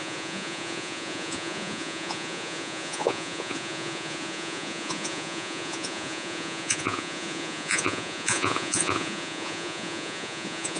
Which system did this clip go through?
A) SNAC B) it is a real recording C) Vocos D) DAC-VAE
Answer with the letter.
C